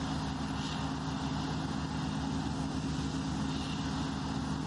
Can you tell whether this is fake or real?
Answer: real